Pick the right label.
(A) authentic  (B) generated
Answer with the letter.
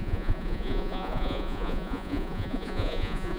B